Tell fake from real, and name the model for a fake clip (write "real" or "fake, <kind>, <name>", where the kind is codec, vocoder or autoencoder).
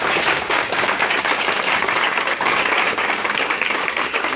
fake, codec, DAC